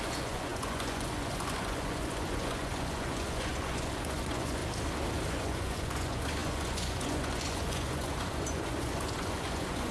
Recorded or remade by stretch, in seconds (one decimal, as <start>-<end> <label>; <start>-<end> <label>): 0.0-4.6 remade; 4.6-5.3 recorded; 5.3-9.9 remade